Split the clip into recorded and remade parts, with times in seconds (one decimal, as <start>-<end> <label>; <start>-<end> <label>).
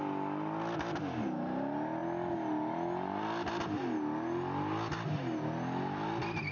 0.0-6.5 recorded